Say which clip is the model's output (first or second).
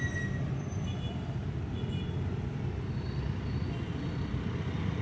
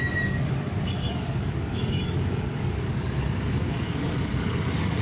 second